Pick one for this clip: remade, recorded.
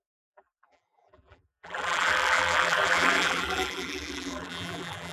remade